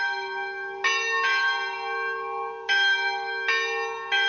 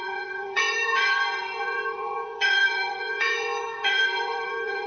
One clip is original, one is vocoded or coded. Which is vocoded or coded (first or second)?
second